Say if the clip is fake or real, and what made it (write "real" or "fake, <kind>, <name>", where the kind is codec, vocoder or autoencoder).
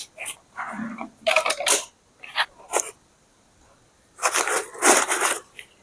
real